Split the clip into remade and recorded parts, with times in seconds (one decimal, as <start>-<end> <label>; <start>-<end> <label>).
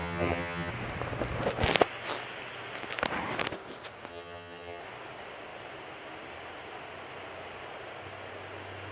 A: 0.0-0.7 remade; 0.7-4.1 recorded; 4.1-4.8 remade; 4.8-8.9 recorded